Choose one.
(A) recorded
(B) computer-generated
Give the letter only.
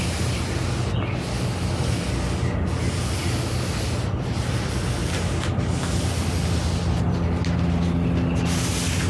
A